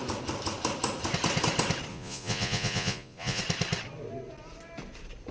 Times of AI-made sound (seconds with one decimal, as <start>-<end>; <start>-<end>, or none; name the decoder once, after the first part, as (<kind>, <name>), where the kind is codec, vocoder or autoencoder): 1.9-3.4 (vocoder, Vocos)